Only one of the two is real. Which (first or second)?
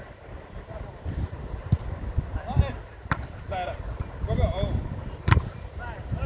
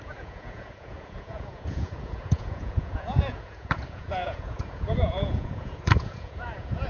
first